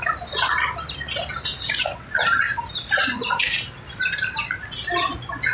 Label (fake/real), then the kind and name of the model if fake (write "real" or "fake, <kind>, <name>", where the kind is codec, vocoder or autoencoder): real